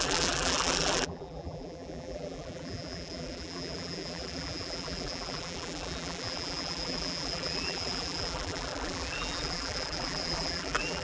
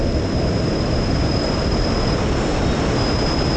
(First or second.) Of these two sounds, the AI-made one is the first